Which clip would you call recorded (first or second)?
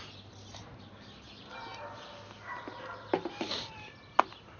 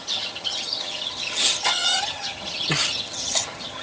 first